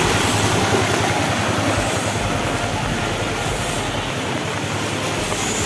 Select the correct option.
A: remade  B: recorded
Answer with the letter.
B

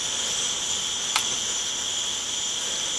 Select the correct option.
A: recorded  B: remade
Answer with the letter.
B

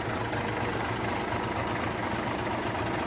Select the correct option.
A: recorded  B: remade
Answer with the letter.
A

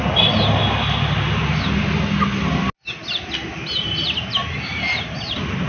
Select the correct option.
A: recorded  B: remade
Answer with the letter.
A